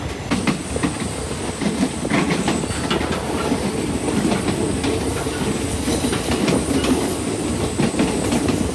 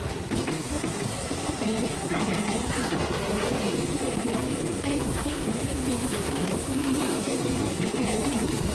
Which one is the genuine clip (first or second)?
first